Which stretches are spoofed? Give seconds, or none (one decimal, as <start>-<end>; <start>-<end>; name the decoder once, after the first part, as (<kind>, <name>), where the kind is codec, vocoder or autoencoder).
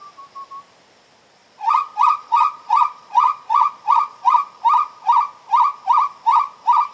1.4-4.4 (vocoder, Vocos)